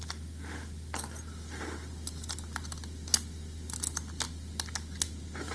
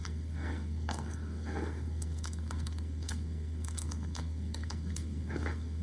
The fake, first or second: second